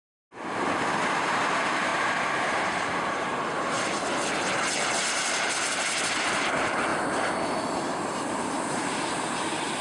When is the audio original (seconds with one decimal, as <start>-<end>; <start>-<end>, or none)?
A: 0.0-1.2; 3.3-5.0; 6.9-7.7